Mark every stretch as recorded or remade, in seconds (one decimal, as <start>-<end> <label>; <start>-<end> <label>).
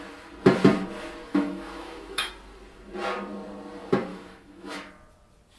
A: 0.0-1.3 recorded; 1.3-2.3 remade; 2.3-4.1 recorded; 4.1-4.9 remade; 4.9-5.6 recorded